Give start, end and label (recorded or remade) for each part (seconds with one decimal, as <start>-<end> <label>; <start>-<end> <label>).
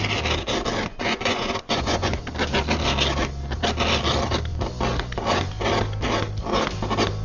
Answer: 0.0-0.9 recorded; 0.9-2.2 remade; 2.2-7.2 recorded